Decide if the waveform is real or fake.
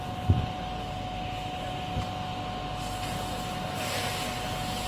real